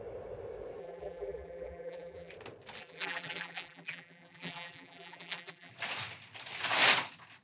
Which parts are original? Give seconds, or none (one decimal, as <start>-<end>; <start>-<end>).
0.0-0.8; 2.3-2.8; 5.7-7.4

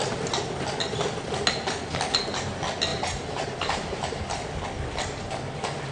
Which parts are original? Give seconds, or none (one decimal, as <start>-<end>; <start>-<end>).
0.0-2.9; 4.3-5.9

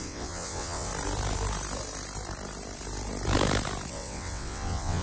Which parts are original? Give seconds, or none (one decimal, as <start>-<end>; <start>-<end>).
0.9-3.9

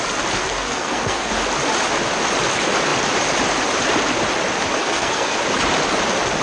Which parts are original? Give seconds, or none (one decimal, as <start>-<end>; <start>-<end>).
0.0-0.4; 1.3-4.8; 5.4-6.4